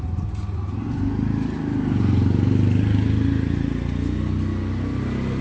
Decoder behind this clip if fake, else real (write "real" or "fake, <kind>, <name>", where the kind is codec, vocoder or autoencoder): real